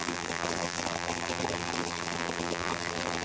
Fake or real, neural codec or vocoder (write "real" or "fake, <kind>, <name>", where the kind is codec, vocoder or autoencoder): fake, vocoder, BigVGAN v2